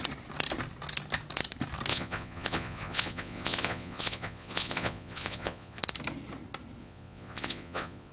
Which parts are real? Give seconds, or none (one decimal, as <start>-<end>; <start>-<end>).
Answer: 0.0-1.9; 5.8-6.8